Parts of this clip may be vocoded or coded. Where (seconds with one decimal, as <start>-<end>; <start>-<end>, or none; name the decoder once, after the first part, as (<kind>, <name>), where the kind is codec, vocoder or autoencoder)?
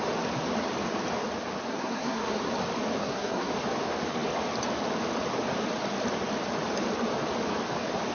1.7-2.5 (codec, SNAC); 3.0-3.5